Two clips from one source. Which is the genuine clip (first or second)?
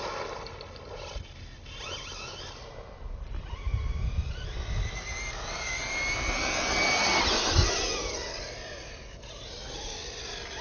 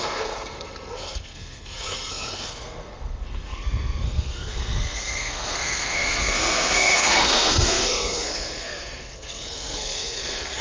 first